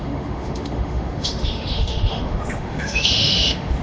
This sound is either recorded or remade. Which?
remade